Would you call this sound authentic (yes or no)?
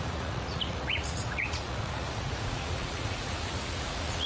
no